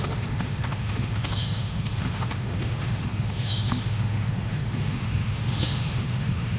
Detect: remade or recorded remade